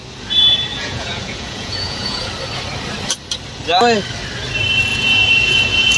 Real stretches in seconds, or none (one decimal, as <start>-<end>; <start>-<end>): 0.0-0.7; 2.3-4.9